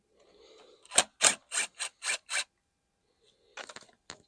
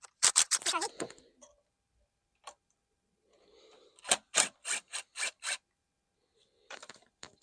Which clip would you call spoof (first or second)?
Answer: second